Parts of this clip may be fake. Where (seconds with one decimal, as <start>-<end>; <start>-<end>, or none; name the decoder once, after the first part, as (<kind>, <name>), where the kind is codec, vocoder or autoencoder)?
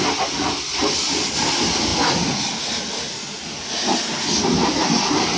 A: none